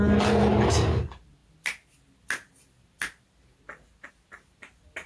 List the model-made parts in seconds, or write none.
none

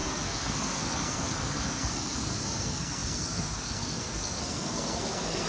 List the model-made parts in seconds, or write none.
0.0-5.5 (codec, SNAC)